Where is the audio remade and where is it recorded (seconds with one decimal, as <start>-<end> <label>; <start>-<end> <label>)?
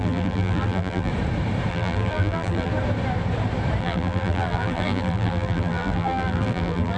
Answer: 0.0-1.1 remade; 1.1-1.7 recorded; 1.7-2.7 remade; 2.7-3.8 recorded; 3.8-7.0 remade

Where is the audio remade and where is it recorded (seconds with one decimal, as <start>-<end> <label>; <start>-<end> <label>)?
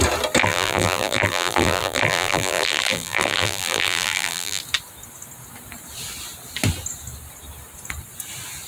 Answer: 0.0-0.4 recorded; 0.4-4.6 remade; 4.6-8.7 recorded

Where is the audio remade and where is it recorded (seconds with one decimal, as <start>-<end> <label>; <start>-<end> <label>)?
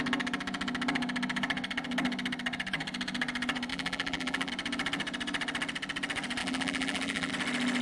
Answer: 0.0-3.7 recorded; 3.7-4.5 remade; 4.5-6.4 recorded; 6.4-7.3 remade; 7.3-7.8 recorded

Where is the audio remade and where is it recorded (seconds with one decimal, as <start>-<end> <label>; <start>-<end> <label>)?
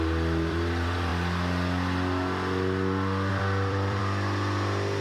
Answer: 0.0-1.1 remade; 1.1-3.3 recorded; 3.3-4.0 remade; 4.0-5.0 recorded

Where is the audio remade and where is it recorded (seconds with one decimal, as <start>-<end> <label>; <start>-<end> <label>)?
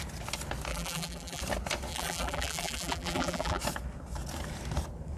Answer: 0.0-0.7 recorded; 0.7-1.4 remade; 1.4-1.9 recorded; 1.9-3.6 remade; 3.6-5.2 recorded